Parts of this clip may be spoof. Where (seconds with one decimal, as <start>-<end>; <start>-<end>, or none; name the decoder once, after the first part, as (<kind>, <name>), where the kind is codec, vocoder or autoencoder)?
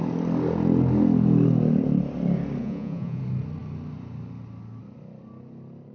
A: 2.6-3.2 (vocoder, Vocos)